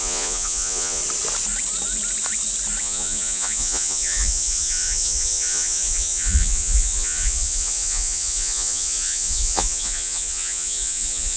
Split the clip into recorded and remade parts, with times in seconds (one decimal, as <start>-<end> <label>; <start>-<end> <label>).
0.0-1.0 remade; 1.0-2.8 recorded; 2.8-11.4 remade